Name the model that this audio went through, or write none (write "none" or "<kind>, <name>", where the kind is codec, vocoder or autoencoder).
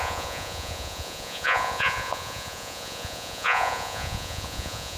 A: vocoder, Vocos